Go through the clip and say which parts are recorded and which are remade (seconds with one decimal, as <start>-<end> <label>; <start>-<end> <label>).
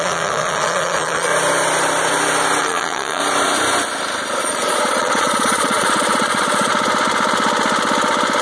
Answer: 0.0-1.3 remade; 1.3-2.6 recorded; 2.6-3.2 remade; 3.2-4.4 recorded; 4.4-6.7 remade; 6.7-8.4 recorded